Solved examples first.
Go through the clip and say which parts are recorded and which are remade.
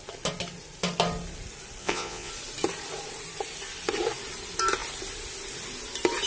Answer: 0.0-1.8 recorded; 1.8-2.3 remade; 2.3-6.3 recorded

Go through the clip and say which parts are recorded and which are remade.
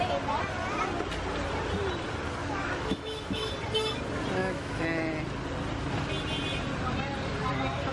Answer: 0.0-2.4 recorded; 2.4-3.4 remade; 3.4-4.4 recorded; 4.4-5.1 remade; 5.1-7.9 recorded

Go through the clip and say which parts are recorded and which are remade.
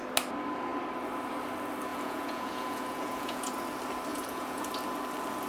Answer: 0.0-1.9 recorded; 1.9-3.5 remade; 3.5-4.1 recorded; 4.1-4.7 remade; 4.7-5.5 recorded